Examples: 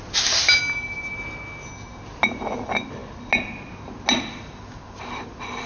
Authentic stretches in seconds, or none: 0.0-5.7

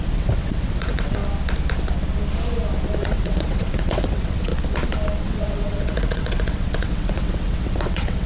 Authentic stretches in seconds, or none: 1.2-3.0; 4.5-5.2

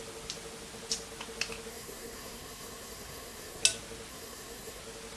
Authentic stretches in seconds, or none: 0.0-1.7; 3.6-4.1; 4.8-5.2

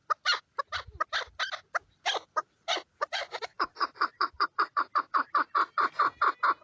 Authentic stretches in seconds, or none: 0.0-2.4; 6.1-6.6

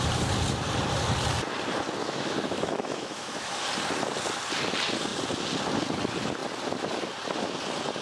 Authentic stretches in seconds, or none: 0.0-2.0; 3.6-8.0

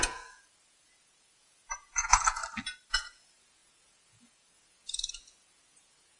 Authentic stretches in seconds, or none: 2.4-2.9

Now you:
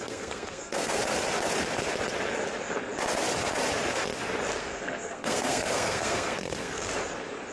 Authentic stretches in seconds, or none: 1.0-4.6; 6.9-7.5

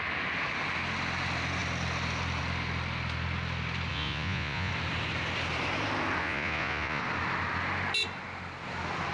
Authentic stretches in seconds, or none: 0.0-3.9; 4.7-6.2; 7.0-9.1